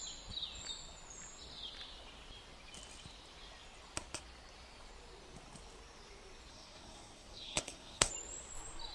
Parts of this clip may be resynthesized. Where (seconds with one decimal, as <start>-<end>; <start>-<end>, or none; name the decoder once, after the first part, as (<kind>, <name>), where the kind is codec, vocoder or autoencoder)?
6.5-8.1 (codec, SNAC)